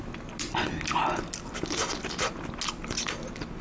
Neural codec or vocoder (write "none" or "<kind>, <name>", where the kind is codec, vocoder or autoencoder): none